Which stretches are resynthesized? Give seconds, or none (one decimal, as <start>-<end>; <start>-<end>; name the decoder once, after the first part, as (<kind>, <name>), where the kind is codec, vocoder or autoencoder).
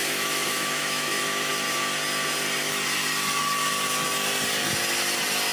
0.0-1.5 (autoencoder, DAC-VAE)